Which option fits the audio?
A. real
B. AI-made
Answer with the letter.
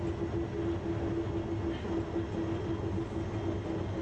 A